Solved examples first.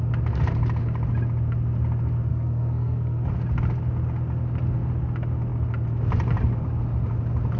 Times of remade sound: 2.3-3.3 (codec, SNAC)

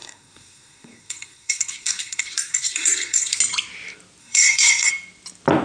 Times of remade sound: 0.0-3.4 (codec, SNAC); 4.2-4.9

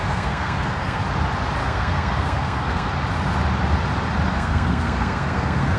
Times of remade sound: 0.0-1.0 (codec, SNAC); 1.6-2.9; 4.3-5.8

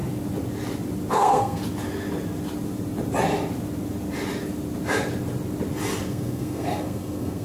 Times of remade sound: 1.1-1.6 (codec, SNAC); 6.0-7.4